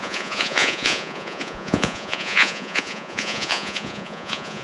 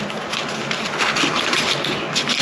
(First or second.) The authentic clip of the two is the second